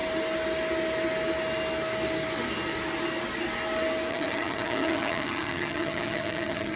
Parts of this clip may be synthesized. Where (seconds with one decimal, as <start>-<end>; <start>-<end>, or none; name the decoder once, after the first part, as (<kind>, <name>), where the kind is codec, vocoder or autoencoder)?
4.1-6.8 (vocoder, HiFi-GAN)